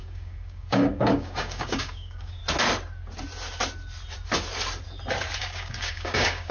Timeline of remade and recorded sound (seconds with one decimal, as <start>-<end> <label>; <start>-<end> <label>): 0.0-2.4 remade; 2.4-5.4 recorded; 5.4-6.5 remade

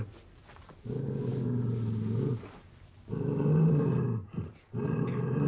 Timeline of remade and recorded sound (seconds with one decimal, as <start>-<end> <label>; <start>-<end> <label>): 0.0-5.5 recorded

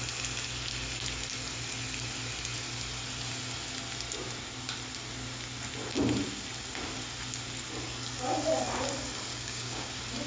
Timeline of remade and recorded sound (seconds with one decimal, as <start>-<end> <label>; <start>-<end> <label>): 0.0-9.3 recorded; 9.3-9.9 remade; 9.9-10.3 recorded

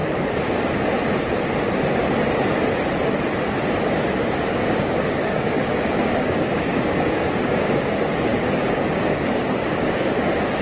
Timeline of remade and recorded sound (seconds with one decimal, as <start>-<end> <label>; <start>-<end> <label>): 0.0-4.2 recorded; 4.2-10.6 remade

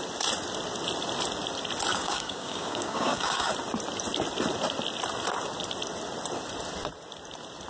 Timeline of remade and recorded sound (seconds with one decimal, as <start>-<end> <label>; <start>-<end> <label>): 0.0-1.9 recorded; 1.9-3.5 remade; 3.5-7.7 recorded